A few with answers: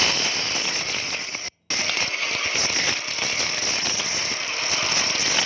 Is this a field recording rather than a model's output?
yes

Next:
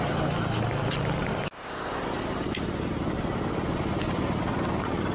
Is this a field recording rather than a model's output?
yes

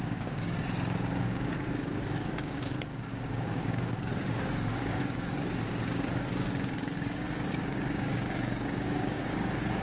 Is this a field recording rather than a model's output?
no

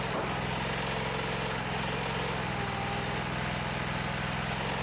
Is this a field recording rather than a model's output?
yes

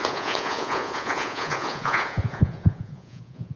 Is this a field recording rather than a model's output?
no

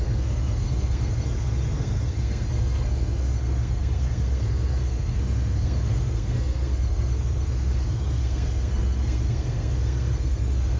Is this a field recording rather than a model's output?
no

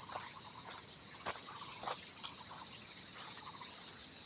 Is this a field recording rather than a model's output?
yes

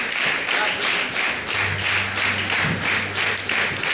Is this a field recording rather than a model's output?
yes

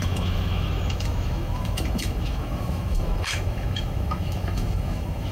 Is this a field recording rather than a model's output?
no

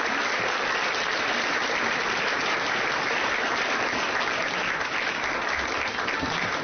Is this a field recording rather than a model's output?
yes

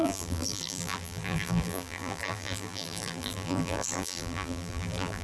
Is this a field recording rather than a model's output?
no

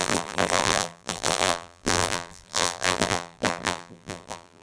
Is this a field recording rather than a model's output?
no